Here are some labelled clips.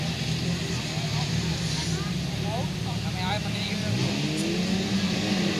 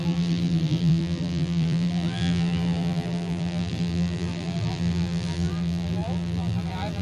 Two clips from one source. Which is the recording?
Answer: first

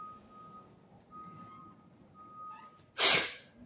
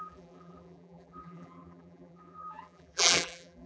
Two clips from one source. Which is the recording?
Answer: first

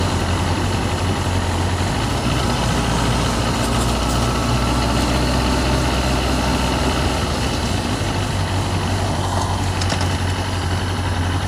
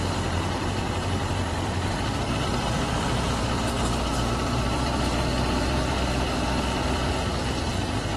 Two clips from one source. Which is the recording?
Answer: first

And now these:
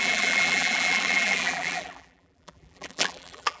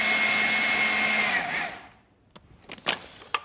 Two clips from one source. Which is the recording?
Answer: second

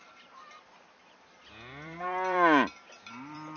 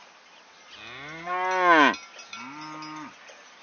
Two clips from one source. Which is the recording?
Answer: second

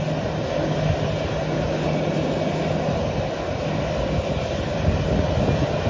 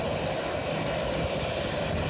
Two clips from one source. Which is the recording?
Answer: first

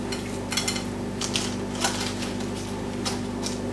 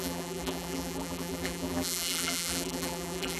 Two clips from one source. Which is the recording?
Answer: first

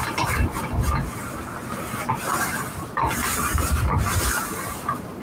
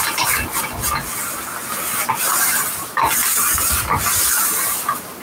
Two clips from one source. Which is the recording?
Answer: second